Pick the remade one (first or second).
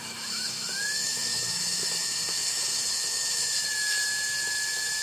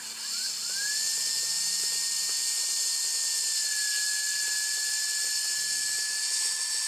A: first